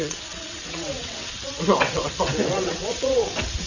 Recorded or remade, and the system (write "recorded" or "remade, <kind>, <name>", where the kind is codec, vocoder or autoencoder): remade, vocoder, WaveNeXt